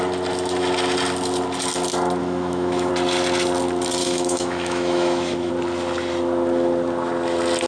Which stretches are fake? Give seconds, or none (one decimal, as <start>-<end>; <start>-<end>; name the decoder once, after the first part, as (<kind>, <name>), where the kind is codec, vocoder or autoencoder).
2.2-2.9 (autoencoder, DAC-VAE); 4.0-5.5